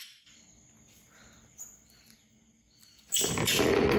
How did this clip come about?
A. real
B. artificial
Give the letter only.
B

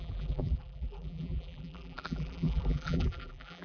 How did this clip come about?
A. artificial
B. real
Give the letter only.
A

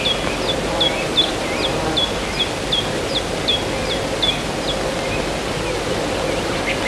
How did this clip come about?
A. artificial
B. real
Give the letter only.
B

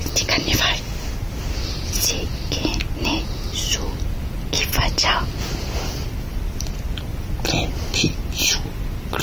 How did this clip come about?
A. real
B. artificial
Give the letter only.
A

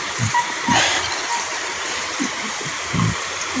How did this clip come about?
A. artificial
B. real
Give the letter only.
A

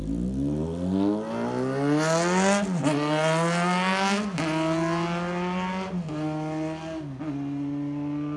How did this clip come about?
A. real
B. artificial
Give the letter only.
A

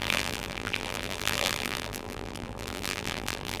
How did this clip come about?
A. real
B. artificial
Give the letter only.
B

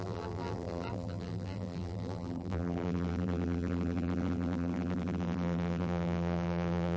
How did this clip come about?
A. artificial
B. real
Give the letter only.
A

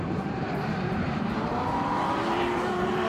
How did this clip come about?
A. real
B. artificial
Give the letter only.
B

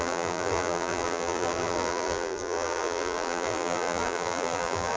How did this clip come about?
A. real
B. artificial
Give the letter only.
B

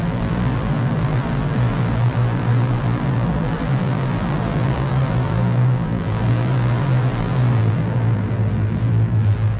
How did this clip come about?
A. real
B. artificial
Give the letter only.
B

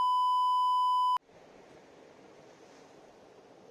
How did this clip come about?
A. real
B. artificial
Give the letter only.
A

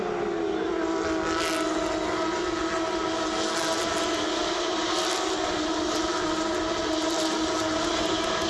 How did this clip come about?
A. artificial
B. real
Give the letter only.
B